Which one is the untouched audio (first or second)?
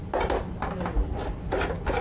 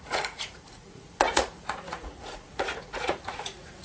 first